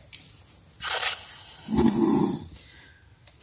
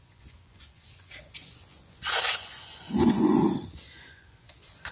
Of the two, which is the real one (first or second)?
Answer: first